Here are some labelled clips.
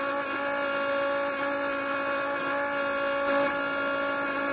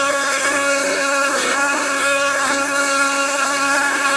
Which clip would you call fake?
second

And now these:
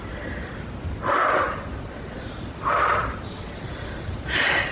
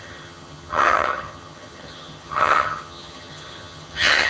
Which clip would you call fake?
second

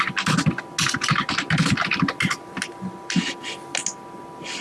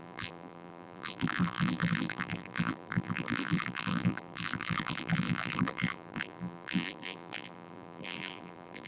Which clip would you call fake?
second